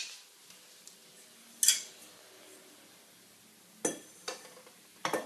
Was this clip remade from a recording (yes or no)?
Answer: no